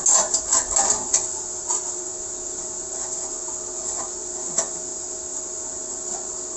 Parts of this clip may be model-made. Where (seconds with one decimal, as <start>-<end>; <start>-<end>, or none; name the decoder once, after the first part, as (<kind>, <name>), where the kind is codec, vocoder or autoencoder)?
none